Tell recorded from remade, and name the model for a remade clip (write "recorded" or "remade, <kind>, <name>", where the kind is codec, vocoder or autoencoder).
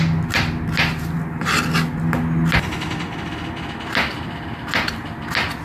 recorded